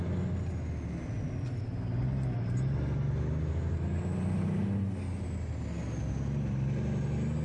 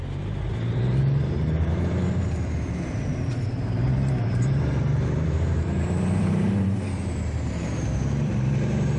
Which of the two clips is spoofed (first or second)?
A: second